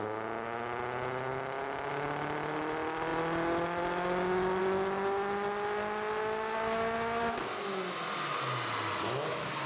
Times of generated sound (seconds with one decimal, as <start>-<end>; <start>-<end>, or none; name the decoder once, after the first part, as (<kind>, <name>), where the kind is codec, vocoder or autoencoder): none